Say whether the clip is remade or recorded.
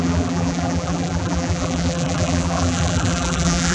remade